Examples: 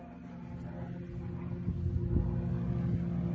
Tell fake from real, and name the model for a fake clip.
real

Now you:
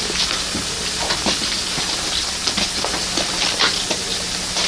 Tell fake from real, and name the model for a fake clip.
real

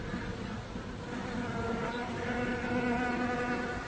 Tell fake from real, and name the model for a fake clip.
real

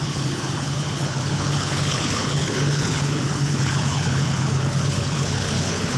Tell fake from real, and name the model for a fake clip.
fake, codec, HILCodec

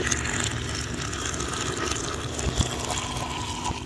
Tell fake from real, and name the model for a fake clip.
real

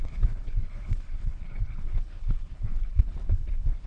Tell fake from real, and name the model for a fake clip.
fake, codec, HILCodec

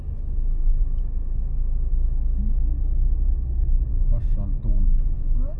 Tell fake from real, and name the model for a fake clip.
real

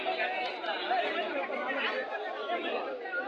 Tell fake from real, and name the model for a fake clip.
real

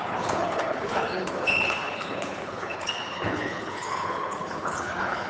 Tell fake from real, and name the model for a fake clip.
fake, codec, HILCodec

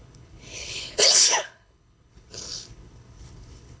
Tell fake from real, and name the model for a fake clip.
fake, codec, HILCodec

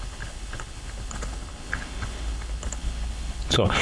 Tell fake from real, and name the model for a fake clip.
fake, codec, HILCodec